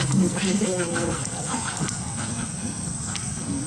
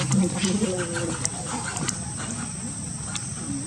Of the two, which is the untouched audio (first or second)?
second